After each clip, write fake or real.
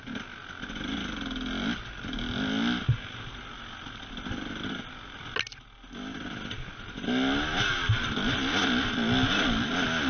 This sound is real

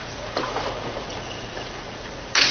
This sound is fake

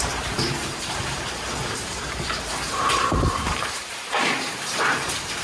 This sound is fake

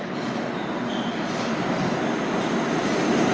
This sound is real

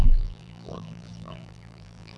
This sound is fake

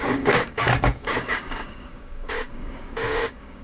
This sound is fake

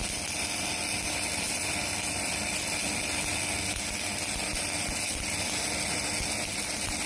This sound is real